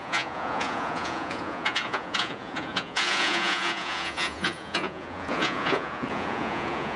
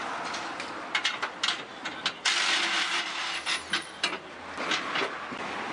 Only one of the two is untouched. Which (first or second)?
second